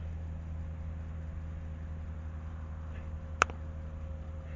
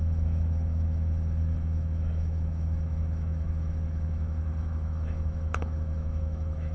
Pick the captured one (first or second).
first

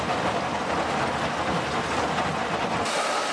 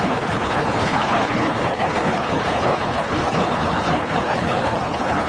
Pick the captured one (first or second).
first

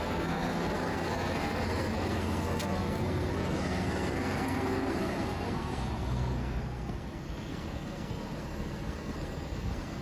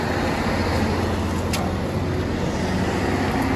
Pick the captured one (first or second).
second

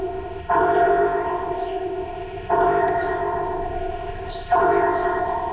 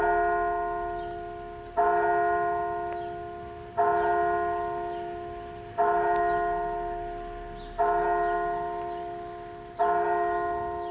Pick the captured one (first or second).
second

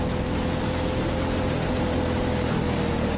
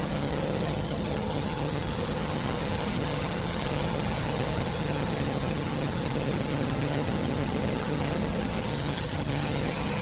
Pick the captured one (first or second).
first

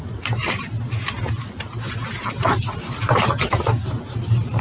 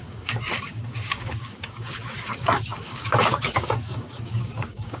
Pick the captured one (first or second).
first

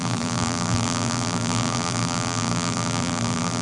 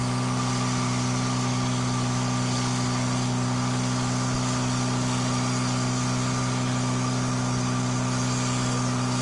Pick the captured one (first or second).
second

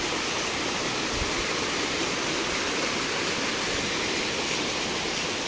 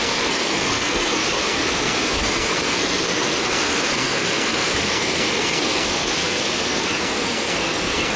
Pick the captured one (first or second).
first